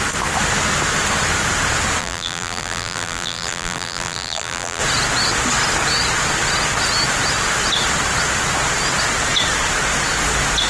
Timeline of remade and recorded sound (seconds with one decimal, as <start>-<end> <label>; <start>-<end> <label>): 0.0-2.0 recorded; 2.0-4.8 remade; 4.8-10.7 recorded